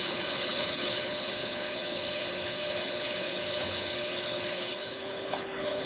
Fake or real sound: fake